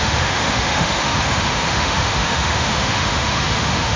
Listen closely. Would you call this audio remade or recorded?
remade